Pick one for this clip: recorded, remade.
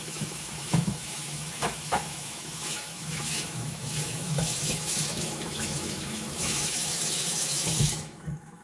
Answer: remade